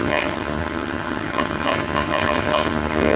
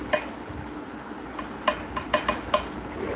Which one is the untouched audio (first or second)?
second